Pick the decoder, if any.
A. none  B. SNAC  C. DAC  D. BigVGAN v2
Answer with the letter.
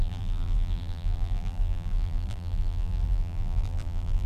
D